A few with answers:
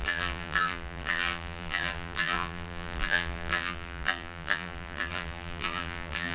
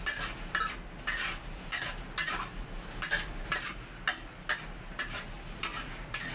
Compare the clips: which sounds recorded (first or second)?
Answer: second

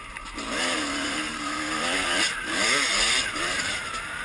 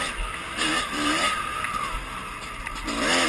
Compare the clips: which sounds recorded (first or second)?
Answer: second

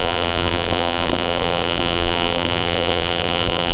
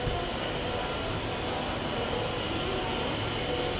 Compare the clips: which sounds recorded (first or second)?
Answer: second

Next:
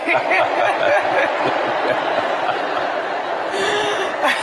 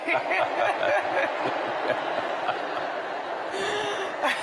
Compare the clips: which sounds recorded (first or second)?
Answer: second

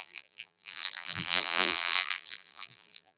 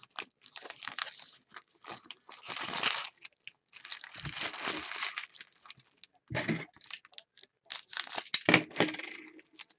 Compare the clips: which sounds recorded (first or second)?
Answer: second